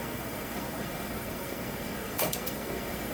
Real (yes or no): no